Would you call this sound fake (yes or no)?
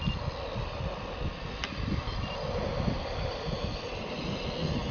no